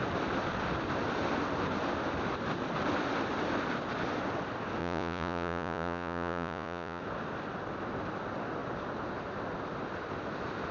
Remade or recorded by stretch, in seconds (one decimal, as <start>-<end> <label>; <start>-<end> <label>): 0.0-4.8 recorded; 4.8-7.0 remade; 7.0-10.7 recorded